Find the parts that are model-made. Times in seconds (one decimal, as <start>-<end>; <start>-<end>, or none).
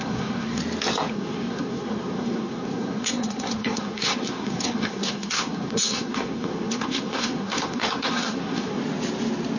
0.0-0.6; 1.1-8.8